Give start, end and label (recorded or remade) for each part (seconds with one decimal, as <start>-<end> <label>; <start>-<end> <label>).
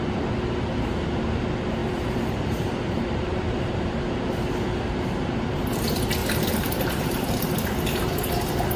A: 0.0-1.8 recorded; 1.8-4.1 remade; 4.1-6.2 recorded; 6.2-8.3 remade; 8.3-8.8 recorded